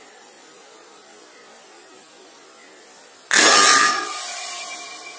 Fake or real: real